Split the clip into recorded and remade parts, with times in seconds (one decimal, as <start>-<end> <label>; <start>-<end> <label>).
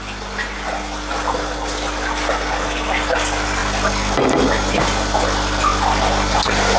0.0-6.8 recorded